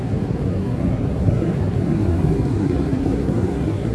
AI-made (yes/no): yes